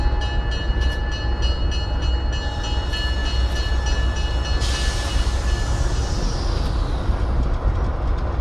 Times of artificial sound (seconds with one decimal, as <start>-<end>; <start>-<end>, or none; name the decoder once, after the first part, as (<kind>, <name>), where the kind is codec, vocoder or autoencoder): none